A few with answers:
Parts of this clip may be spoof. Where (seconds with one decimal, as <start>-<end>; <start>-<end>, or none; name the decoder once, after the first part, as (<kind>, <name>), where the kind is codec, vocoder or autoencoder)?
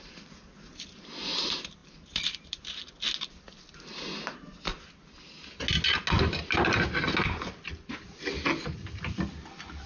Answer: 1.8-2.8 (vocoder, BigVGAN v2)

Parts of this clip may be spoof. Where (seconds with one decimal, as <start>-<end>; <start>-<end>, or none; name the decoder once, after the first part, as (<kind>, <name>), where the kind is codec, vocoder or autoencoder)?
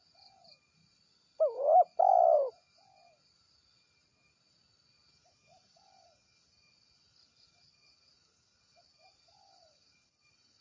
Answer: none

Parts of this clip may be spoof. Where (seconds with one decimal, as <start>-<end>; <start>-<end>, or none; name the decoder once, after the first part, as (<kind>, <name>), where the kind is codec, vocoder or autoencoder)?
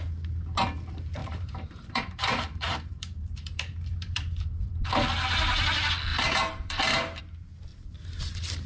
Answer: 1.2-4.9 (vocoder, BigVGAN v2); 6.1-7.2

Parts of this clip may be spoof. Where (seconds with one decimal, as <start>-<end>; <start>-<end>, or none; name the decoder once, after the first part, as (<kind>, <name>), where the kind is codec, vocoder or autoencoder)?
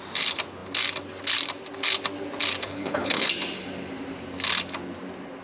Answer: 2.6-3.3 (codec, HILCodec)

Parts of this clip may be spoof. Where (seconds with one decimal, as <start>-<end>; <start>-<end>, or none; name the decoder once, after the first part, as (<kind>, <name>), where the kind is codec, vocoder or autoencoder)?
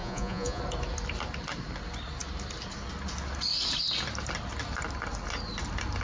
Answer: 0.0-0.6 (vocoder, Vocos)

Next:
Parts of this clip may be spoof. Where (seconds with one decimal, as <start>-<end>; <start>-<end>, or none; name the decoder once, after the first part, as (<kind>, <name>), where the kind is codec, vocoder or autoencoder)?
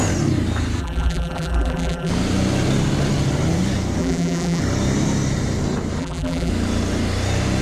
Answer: 0.8-2.1 (vocoder, BigVGAN v2); 4.0-4.6; 6.0-6.5